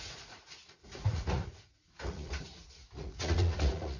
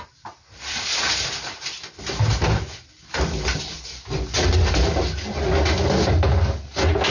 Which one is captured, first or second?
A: second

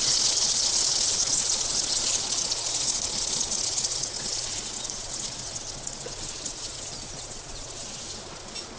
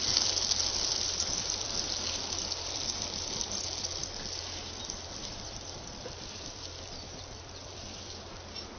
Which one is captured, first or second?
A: second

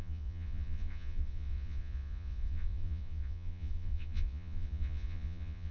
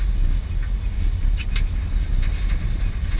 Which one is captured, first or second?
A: second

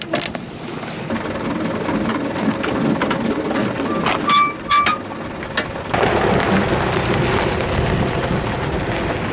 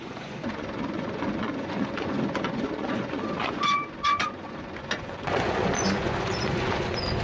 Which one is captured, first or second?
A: first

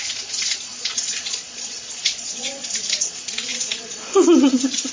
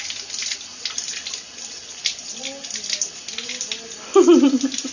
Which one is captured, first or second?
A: second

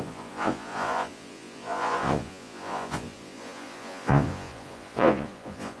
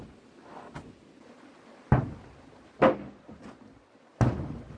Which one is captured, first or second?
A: second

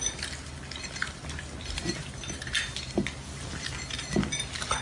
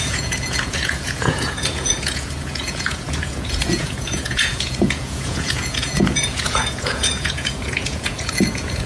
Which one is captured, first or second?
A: first